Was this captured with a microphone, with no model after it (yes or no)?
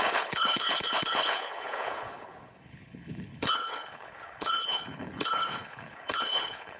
no